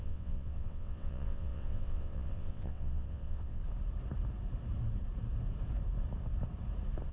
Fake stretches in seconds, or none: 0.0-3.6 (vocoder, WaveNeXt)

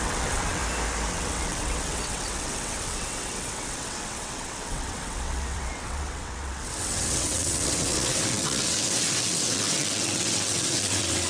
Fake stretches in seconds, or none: 0.0-0.6 (vocoder, WaveNeXt); 1.1-11.3

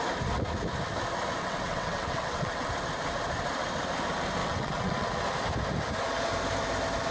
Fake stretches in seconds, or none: 1.4-2.7 (vocoder, WaveNeXt); 4.4-5.1

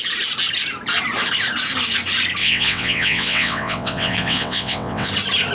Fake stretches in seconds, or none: 2.4-5.1 (vocoder, WaveNeXt)

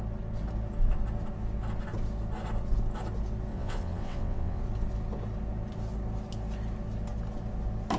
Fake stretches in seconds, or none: 3.5-4.6 (vocoder, WaveNeXt)